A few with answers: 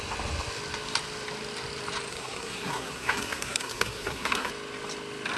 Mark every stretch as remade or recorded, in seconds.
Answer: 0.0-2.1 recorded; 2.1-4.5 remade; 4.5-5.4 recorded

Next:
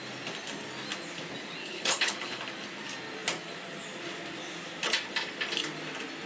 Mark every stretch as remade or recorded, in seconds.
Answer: 0.0-1.6 recorded; 1.6-2.4 remade; 2.4-6.3 recorded

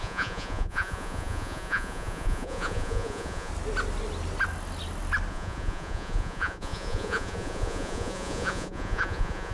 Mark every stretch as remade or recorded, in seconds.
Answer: 0.0-3.5 remade; 3.5-5.3 recorded; 5.3-9.5 remade

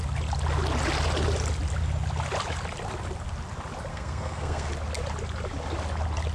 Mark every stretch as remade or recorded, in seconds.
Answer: 0.0-3.9 recorded; 3.9-4.7 remade; 4.7-6.3 recorded

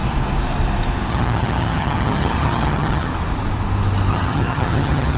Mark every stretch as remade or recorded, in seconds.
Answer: 0.0-1.1 recorded; 1.1-3.1 remade; 3.1-4.1 recorded; 4.1-5.2 remade